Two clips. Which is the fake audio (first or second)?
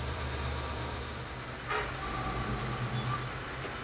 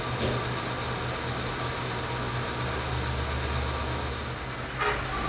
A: first